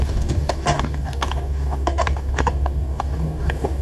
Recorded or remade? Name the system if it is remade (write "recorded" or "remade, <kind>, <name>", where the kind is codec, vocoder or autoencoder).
remade, codec, DAC